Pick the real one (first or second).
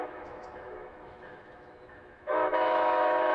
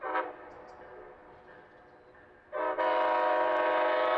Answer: second